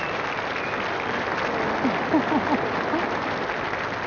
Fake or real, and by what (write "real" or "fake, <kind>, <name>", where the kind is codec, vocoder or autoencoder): real